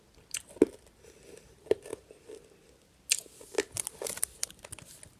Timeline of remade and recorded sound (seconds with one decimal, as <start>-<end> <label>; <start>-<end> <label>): 0.0-5.2 recorded